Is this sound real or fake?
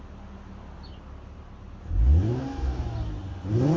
real